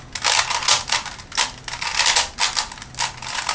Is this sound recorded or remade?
recorded